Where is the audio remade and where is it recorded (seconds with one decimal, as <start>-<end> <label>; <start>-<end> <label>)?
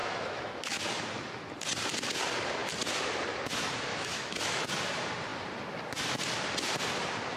0.0-0.8 remade; 0.8-3.9 recorded; 3.9-4.7 remade; 4.7-7.4 recorded